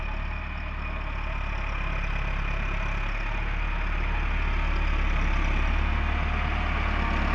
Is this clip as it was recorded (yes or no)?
yes